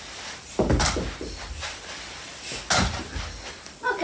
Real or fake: real